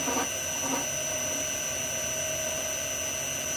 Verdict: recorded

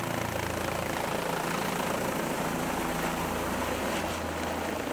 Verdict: recorded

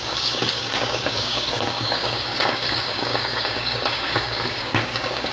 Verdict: remade